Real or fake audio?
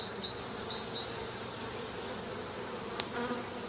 real